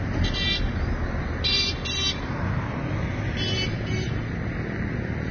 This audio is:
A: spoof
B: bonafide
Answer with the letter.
B